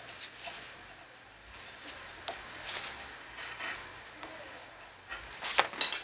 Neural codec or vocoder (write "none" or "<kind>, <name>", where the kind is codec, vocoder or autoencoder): none